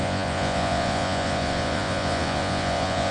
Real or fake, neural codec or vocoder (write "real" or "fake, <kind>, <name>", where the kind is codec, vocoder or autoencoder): fake, vocoder, Vocos